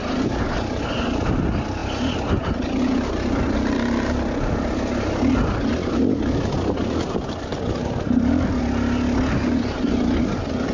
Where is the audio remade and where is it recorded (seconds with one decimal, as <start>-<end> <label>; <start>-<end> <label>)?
0.0-10.7 recorded